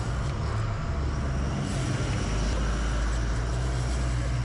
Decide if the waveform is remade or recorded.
recorded